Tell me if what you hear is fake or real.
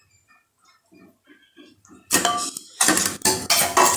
real